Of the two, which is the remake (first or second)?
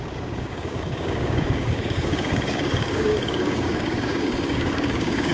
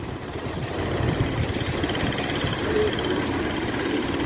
first